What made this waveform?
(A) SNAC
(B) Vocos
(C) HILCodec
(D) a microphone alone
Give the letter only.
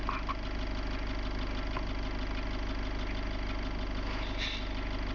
D